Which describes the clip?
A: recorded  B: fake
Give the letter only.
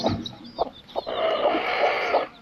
A